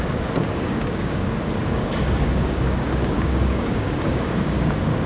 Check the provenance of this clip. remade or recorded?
remade